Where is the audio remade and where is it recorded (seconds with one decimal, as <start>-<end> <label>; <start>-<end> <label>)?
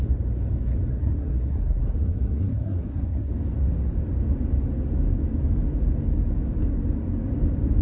0.0-0.9 recorded; 0.9-3.3 remade; 3.3-7.8 recorded